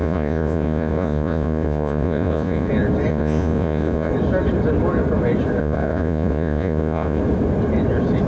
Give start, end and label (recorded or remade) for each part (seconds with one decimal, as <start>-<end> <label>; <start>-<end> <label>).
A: 0.0-2.7 remade; 2.7-3.1 recorded; 3.1-4.1 remade; 4.1-5.6 recorded; 5.6-7.2 remade; 7.2-8.3 recorded